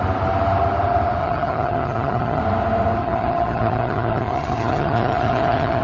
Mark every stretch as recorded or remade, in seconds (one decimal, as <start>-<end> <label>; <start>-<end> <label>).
0.0-1.2 recorded; 1.2-2.4 remade; 2.4-3.0 recorded; 3.0-5.8 remade